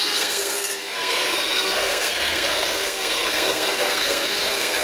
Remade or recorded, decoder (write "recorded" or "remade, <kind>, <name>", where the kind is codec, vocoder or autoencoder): remade, codec, SNAC